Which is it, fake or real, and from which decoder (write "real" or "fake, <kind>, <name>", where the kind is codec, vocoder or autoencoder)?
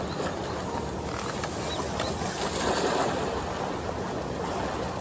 real